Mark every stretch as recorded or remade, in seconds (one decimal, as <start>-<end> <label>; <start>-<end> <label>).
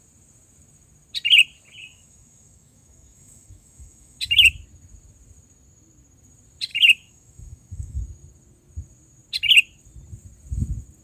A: 0.0-1.8 recorded; 1.8-4.5 remade; 4.5-6.7 recorded; 6.7-8.0 remade; 8.0-11.0 recorded